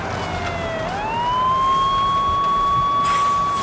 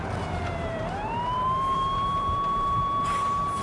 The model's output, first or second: second